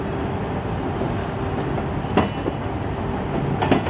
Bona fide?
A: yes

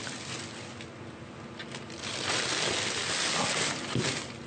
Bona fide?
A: yes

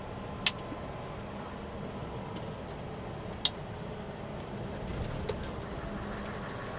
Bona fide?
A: yes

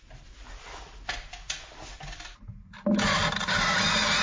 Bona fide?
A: yes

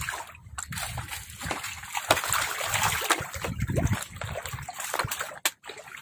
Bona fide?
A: yes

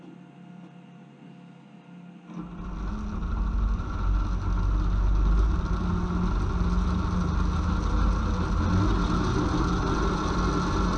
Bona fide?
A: yes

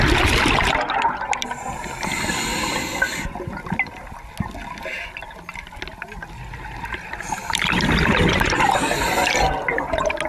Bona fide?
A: yes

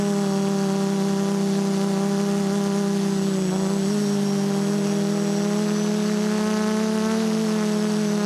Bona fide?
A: yes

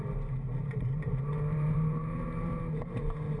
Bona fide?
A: no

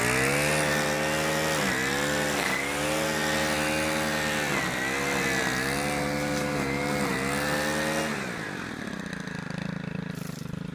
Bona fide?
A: yes